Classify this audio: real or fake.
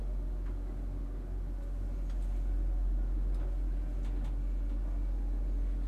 real